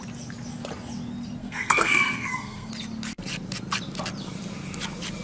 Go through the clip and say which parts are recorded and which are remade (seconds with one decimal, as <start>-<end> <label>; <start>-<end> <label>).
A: 0.0-1.4 recorded; 1.4-2.7 remade; 2.7-5.2 recorded